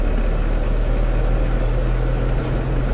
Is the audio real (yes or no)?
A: yes